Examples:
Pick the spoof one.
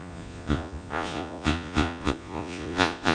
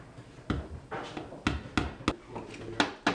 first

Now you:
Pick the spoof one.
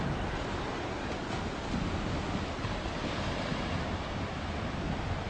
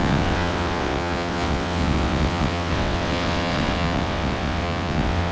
second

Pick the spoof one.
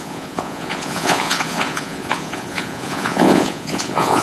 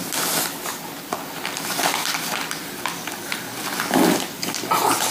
first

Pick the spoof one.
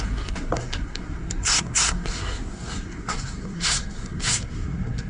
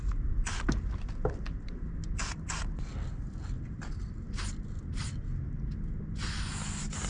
first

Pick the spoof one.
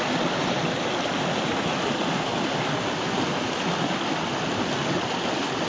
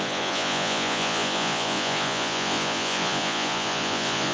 second